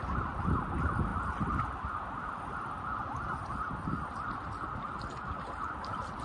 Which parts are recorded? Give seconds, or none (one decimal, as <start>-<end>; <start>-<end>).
0.0-6.2